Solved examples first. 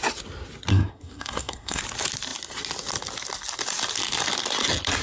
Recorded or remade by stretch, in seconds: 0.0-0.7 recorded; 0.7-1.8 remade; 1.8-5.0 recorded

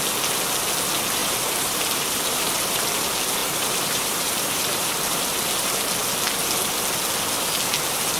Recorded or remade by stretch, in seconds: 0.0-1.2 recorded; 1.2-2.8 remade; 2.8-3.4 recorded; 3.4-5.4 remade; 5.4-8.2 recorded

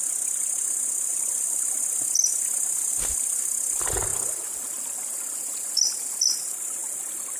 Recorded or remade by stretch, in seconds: 0.0-7.4 recorded

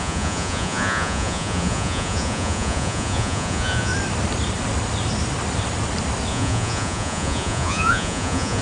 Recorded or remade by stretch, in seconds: 0.0-3.9 remade; 3.9-6.3 recorded; 6.3-8.6 remade